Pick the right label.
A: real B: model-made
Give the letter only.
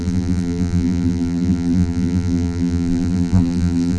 B